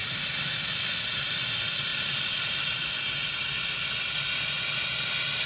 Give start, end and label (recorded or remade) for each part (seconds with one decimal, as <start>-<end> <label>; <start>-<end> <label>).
0.0-0.8 remade; 0.8-1.9 recorded; 1.9-2.9 remade; 2.9-5.5 recorded